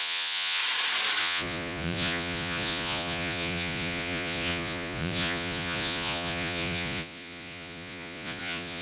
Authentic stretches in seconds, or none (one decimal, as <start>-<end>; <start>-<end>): 0.6-1.2